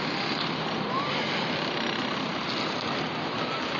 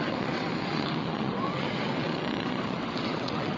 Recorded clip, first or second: first